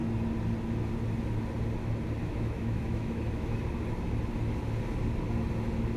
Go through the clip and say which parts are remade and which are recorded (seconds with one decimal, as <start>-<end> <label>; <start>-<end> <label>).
0.0-2.2 recorded; 2.2-3.6 remade; 3.6-6.0 recorded